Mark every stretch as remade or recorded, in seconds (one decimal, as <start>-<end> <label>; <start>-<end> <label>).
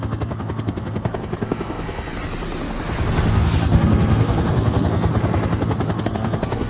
0.0-2.1 remade; 2.1-3.1 recorded; 3.1-5.1 remade; 5.1-6.0 recorded; 6.0-6.7 remade